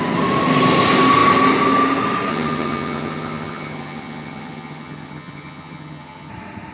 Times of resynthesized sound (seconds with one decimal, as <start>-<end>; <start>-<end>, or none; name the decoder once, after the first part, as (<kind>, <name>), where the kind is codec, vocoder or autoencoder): 2.3-6.3 (vocoder, HiFi-GAN)